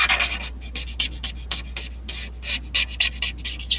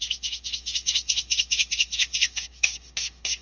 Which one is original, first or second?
first